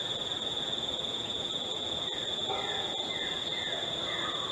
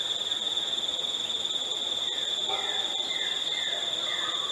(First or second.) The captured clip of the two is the second